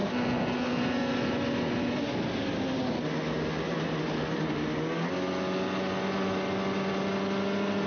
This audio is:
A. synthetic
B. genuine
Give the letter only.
B